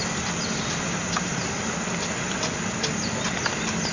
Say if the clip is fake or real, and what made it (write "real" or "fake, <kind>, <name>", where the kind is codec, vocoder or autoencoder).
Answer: real